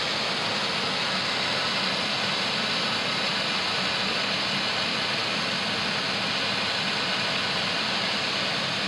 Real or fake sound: real